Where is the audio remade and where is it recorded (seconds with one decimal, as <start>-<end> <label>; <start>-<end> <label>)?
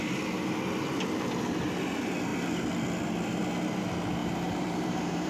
0.0-4.2 recorded; 4.2-5.3 remade